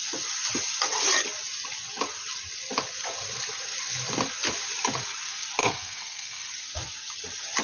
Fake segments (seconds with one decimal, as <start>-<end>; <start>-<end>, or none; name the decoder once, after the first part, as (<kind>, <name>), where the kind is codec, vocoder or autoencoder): 5.6-6.5 (codec, SNAC)